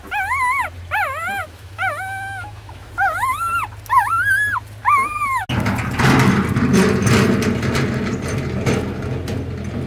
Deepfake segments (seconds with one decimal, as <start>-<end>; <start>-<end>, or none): 1.4-2.9